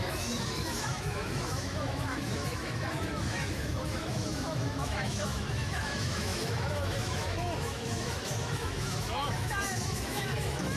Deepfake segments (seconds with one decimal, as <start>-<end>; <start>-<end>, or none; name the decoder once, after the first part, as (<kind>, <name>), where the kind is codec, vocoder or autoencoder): 0.0-10.8 (autoencoder, DAC-VAE)